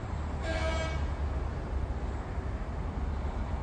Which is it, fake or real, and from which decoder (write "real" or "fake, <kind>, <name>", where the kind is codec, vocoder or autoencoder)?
real